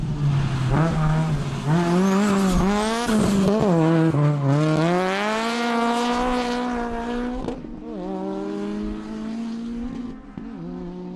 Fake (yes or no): no